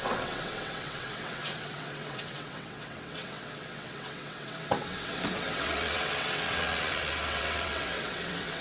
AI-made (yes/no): yes